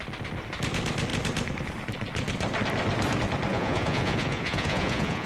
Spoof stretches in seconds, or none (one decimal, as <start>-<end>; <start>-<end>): 3.5-5.3